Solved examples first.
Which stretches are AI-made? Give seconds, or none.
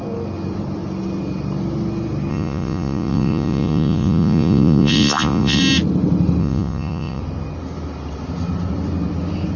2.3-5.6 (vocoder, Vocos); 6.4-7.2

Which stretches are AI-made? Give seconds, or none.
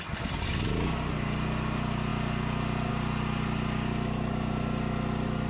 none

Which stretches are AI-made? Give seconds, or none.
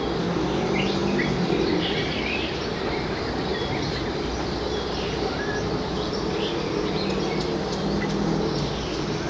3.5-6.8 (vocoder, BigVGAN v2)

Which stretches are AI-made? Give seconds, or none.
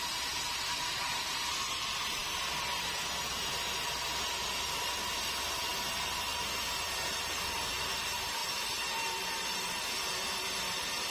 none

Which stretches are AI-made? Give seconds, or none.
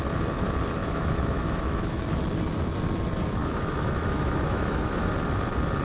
0.8-2.0 (autoencoder, DAC-VAE); 3.4-5.1